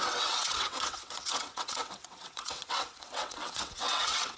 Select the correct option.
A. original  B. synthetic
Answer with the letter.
B